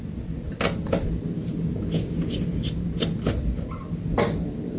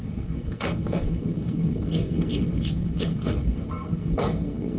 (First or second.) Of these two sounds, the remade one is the second